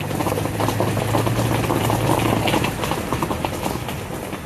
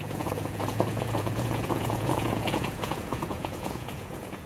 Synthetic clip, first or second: second